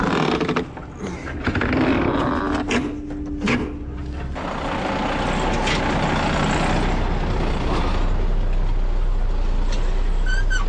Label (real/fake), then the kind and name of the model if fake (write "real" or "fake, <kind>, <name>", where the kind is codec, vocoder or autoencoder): real